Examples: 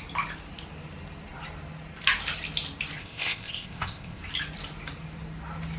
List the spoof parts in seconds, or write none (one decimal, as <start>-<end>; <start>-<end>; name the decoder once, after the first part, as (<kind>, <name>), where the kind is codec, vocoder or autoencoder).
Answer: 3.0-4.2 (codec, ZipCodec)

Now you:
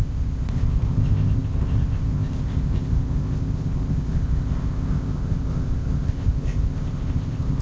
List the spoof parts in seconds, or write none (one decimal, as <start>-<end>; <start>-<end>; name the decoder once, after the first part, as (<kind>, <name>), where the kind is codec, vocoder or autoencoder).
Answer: 0.0-7.6 (codec, ZipCodec)

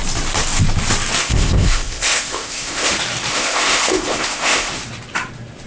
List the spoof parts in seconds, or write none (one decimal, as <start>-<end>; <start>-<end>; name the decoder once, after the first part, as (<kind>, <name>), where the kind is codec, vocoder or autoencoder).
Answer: 1.2-2.9 (codec, ZipCodec); 3.3-4.7

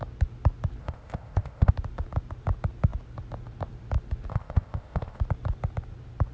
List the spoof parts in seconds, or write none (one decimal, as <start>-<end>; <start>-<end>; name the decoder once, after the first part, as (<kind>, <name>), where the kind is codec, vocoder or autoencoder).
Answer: 0.8-1.7 (codec, ZipCodec); 4.3-5.2

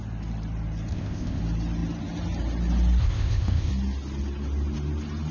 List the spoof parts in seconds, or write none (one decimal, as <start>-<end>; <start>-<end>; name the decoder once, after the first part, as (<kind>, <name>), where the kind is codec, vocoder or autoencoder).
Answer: 0.9-1.4 (codec, ZipCodec); 3.0-3.7

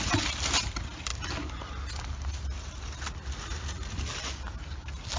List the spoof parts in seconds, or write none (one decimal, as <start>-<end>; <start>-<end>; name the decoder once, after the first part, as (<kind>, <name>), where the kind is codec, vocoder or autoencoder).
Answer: none